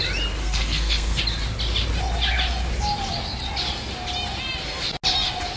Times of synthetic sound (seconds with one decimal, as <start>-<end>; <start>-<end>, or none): 0.4-1.2